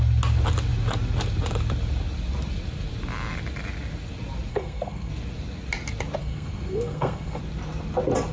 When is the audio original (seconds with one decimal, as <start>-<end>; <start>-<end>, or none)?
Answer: 0.0-4.5; 5.1-6.2; 7.4-8.3